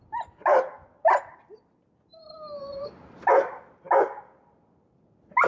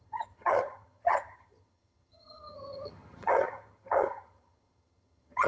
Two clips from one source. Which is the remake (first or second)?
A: second